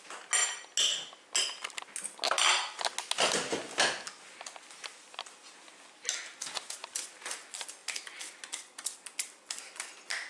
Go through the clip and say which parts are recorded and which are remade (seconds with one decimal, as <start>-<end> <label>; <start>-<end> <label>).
0.0-10.3 recorded